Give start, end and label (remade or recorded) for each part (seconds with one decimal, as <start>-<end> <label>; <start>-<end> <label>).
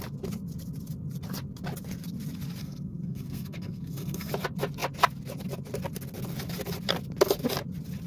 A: 0.0-2.6 recorded; 2.6-4.3 remade; 4.3-8.1 recorded